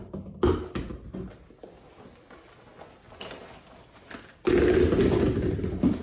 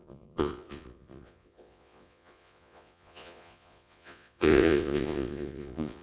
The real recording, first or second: first